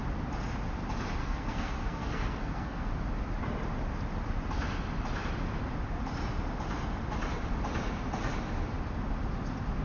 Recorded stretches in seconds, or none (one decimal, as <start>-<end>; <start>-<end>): 0.0-1.2; 2.9-9.8

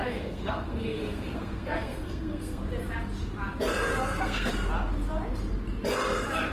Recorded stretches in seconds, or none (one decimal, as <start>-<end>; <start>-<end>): 2.6-3.9; 4.5-6.5